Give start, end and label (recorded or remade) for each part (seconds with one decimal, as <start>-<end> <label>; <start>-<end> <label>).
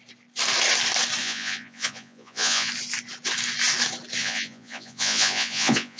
0.0-1.2 recorded; 1.2-2.7 remade; 2.7-4.2 recorded; 4.2-6.0 remade